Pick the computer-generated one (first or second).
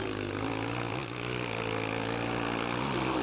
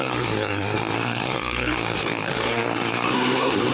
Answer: second